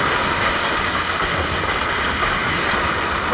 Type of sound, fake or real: real